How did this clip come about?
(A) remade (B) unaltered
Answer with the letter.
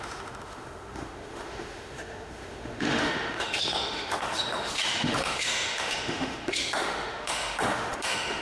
A